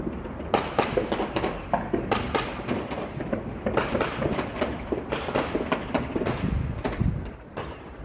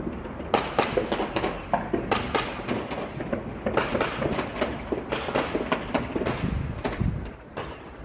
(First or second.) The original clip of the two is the second